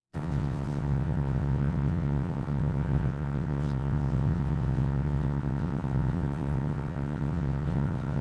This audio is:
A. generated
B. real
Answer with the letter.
A